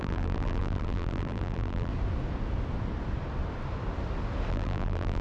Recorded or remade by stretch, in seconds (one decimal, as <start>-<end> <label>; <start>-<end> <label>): 0.0-1.9 remade; 1.9-4.5 recorded; 4.5-5.2 remade